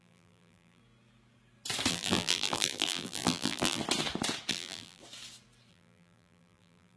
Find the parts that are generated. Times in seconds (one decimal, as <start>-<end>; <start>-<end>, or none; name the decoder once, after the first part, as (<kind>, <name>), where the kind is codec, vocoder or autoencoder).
0.0-0.8 (vocoder, BigVGAN v2); 1.9-3.8; 4.5-5.0; 5.7-7.0